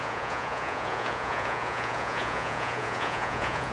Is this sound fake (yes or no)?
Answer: yes